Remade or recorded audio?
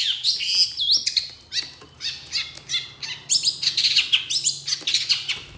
recorded